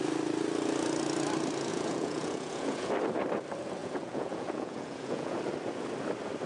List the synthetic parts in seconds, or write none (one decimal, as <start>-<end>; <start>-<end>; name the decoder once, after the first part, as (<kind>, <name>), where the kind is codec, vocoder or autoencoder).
1.7-2.9 (vocoder, Vocos); 3.8-5.4